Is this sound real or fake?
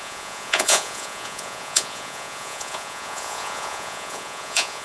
fake